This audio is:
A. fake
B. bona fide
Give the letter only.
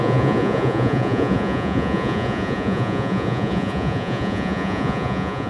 A